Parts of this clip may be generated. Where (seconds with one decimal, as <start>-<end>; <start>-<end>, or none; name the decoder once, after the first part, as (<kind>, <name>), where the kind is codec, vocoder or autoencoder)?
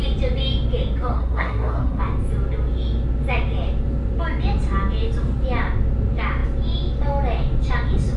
1.1-2.0 (codec, SNAC)